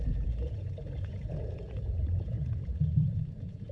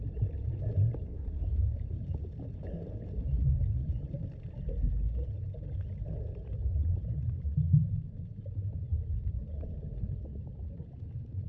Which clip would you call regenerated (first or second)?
first